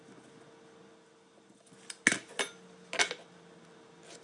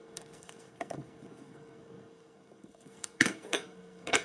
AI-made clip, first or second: second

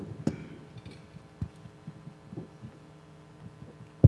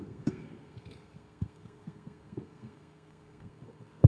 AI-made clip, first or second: second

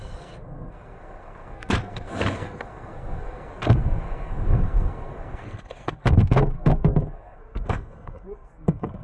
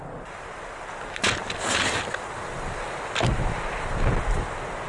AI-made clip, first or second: first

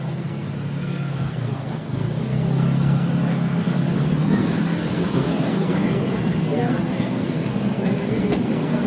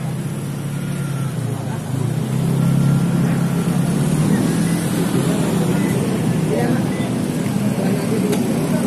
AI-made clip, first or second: first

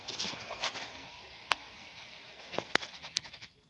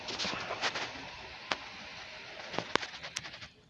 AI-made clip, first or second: first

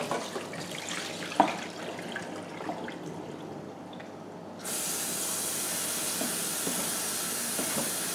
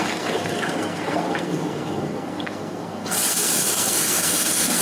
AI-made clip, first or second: second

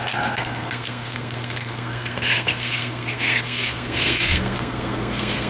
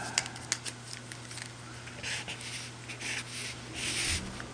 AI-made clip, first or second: first